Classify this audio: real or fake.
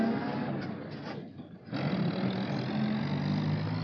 real